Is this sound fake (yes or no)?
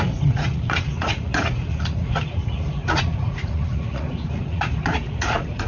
yes